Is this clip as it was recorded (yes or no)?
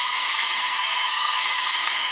no